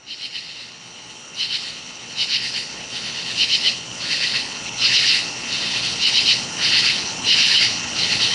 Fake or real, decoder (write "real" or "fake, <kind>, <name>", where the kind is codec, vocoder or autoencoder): fake, codec, HILCodec